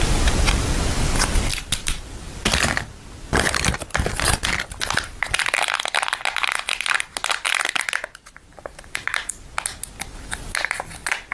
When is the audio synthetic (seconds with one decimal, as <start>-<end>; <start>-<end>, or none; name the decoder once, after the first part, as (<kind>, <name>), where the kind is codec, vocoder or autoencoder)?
1.5-5.7 (vocoder, BigVGAN v2); 8.5-9.1